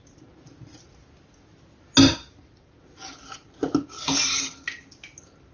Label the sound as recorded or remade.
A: recorded